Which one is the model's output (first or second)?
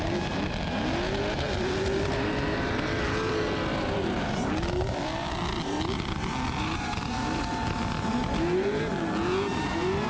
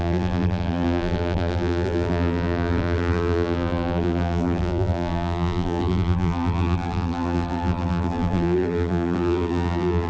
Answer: second